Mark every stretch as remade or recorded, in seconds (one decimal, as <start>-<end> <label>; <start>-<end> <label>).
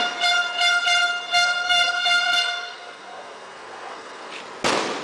0.0-1.3 recorded; 1.3-4.3 remade; 4.3-5.0 recorded